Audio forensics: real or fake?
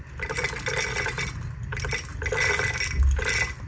real